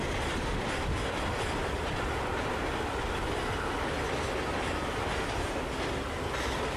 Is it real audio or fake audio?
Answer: real